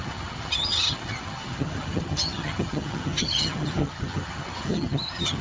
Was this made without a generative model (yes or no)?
no